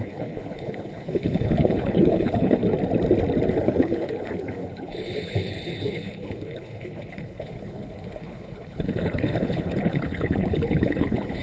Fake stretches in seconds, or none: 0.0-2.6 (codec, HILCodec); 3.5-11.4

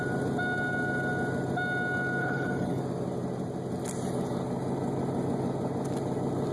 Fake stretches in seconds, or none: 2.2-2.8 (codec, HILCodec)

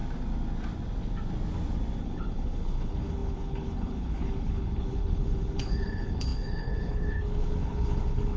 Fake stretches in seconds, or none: 2.0-8.4 (codec, HILCodec)

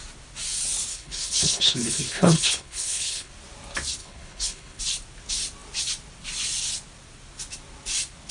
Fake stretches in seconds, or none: 0.9-3.3 (codec, HILCodec); 4.0-4.8